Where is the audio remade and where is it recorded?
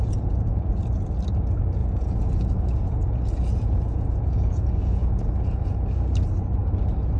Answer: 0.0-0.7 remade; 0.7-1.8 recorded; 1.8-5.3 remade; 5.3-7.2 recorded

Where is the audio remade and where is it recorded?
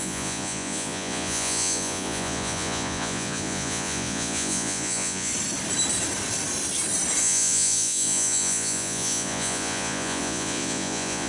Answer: 0.0-5.3 remade; 5.3-7.2 recorded; 7.2-11.3 remade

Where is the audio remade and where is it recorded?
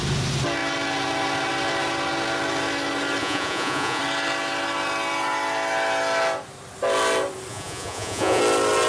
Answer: 0.0-3.2 recorded; 3.2-4.0 remade; 4.0-7.5 recorded; 7.5-8.4 remade; 8.4-8.9 recorded